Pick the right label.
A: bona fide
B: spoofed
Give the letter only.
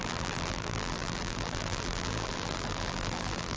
B